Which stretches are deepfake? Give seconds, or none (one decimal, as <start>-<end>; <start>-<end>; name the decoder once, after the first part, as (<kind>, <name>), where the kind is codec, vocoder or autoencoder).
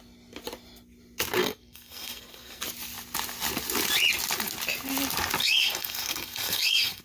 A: 1.4-2.6 (codec, SNAC); 5.4-7.0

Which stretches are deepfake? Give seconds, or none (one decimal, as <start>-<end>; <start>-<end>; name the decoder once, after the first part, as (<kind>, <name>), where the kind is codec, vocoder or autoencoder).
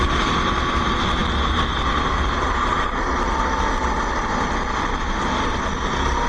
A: none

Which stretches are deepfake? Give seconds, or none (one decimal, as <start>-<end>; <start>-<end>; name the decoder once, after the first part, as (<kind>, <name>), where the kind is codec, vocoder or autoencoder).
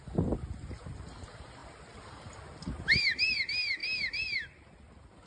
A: none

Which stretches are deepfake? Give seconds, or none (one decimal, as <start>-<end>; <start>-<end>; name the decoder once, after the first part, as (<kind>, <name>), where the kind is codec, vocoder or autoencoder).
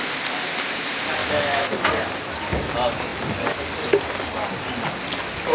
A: 1.2-1.7 (autoencoder, DAC-VAE)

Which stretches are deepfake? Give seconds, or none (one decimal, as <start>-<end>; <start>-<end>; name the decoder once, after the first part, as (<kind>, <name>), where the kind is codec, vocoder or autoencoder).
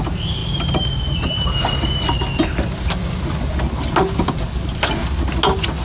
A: none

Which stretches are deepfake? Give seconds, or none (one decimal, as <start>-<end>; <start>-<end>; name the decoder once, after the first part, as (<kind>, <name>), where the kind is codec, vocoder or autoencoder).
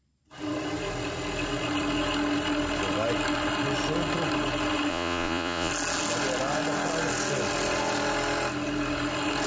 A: 4.9-5.7 (vocoder, Vocos)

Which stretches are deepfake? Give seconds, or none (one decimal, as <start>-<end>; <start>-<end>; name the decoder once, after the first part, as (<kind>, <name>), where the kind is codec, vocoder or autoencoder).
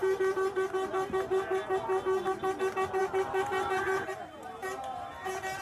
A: 3.0-5.1 (vocoder, BigVGAN v2)